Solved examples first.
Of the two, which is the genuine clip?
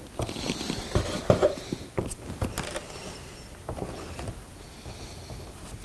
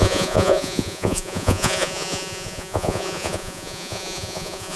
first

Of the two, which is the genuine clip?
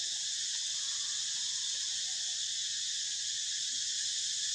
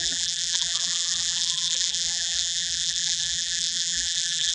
first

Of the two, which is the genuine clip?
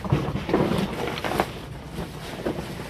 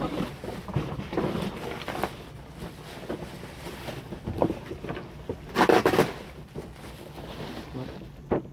second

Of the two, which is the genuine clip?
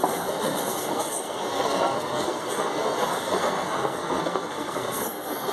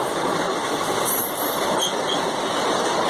second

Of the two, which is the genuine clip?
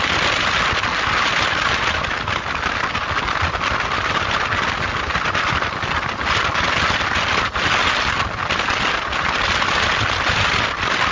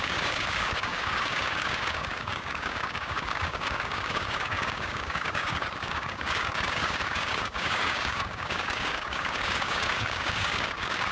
first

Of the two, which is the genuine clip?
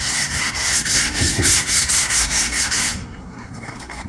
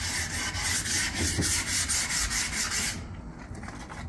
second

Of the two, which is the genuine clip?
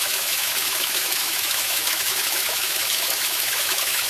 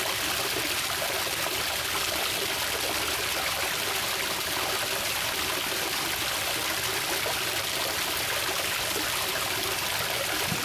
second